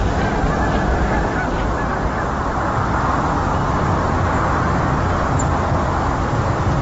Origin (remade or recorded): recorded